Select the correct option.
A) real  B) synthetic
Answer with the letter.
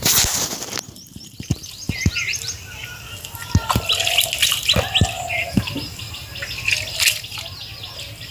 A